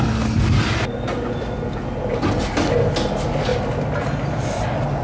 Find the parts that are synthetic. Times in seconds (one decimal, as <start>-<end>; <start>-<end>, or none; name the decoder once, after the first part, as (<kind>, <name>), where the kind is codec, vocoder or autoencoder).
none